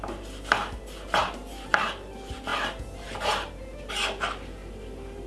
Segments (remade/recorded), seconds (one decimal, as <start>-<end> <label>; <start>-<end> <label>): 0.0-5.3 remade